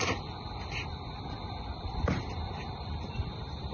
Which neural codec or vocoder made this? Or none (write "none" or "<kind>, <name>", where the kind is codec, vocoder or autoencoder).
vocoder, BigVGAN v2